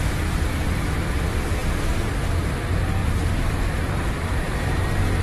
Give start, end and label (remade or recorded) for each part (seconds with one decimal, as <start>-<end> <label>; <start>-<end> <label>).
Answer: 0.0-3.0 recorded; 3.0-4.7 remade; 4.7-5.2 recorded

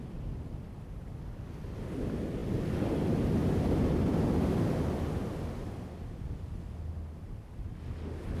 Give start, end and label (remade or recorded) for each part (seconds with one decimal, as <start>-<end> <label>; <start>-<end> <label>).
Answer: 0.0-8.4 recorded

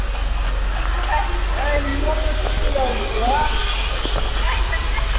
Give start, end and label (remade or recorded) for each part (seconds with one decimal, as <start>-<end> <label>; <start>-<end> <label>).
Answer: 0.0-5.2 recorded

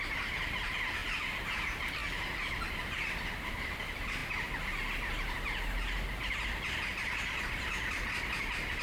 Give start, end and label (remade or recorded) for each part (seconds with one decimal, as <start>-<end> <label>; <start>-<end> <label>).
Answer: 0.0-1.0 recorded; 1.0-1.6 remade; 1.6-8.8 recorded

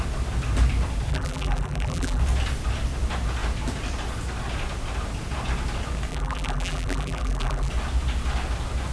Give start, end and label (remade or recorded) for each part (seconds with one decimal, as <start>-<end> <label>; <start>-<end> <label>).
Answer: 0.0-1.1 recorded; 1.1-2.2 remade; 2.2-6.1 recorded; 6.1-7.7 remade; 7.7-8.9 recorded

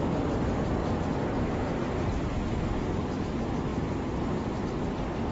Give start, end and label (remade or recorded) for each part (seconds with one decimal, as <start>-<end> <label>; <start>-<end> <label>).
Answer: 0.0-3.7 recorded; 3.7-4.6 remade; 4.6-5.3 recorded